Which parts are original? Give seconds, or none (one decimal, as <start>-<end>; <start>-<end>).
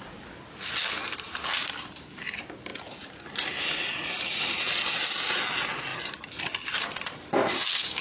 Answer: 0.0-8.0